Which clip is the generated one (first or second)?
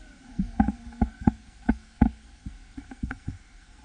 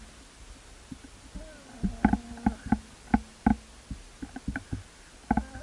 first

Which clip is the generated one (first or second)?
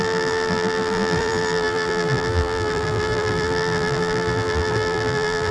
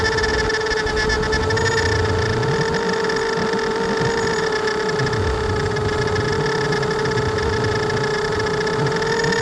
first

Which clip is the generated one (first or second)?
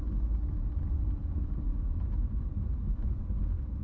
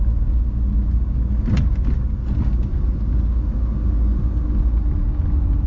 first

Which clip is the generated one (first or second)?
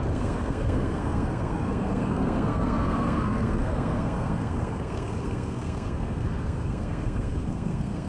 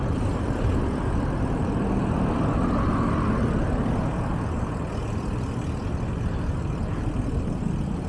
first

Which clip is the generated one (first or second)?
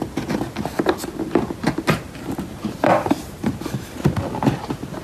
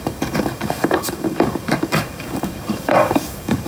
second